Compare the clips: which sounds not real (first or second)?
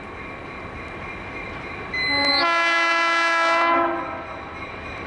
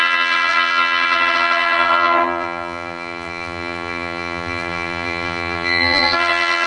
second